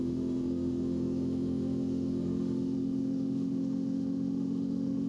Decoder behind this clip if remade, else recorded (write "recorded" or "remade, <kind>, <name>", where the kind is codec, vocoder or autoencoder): remade, autoencoder, DAC-VAE